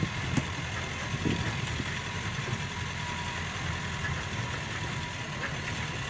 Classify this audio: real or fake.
fake